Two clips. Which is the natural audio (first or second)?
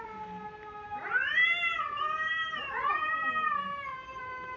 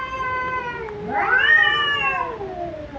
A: second